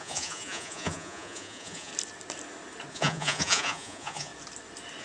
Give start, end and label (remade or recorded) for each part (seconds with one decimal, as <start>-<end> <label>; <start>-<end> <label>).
0.0-1.9 remade; 1.9-2.9 recorded; 2.9-4.3 remade; 4.3-5.0 recorded